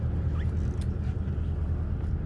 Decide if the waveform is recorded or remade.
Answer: recorded